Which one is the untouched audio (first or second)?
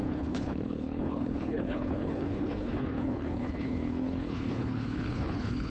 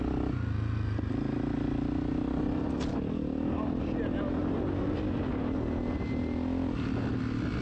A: second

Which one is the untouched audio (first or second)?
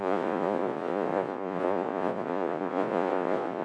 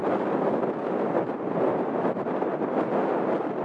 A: second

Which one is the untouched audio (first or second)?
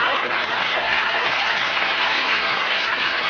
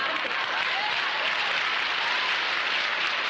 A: second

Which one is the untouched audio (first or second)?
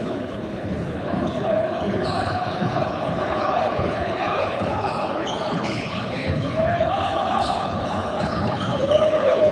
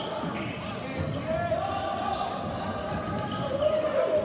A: second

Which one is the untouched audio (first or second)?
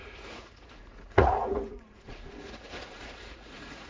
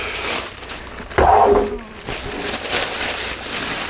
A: second